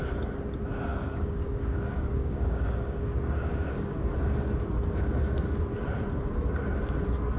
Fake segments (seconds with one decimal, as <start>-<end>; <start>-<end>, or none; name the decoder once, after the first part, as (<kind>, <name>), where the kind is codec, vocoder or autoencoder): 0.9-4.1 (codec, DAC)